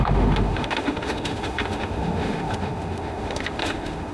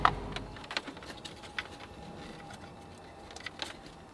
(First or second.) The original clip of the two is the second